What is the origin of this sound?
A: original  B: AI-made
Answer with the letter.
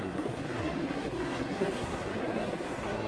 B